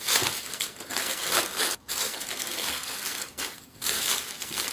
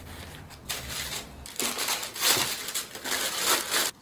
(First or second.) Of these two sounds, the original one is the second